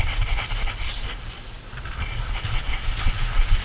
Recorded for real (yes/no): yes